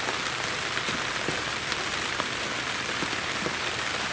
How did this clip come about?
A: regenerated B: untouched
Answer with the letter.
B